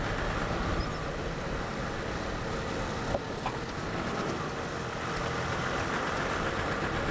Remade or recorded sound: recorded